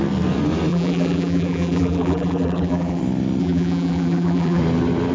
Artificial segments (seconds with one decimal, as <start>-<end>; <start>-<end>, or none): 0.7-3.0; 3.4-4.6